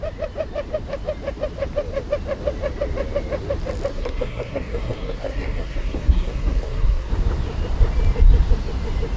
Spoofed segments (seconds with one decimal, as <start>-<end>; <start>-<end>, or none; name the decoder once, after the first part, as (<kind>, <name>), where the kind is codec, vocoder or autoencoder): 3.9-7.1 (codec, SNAC)